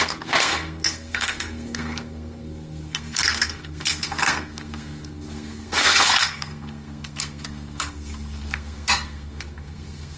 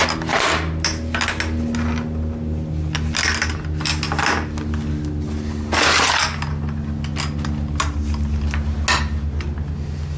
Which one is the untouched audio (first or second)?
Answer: second